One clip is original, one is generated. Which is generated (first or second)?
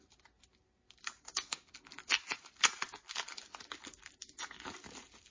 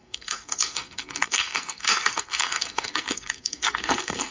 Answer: second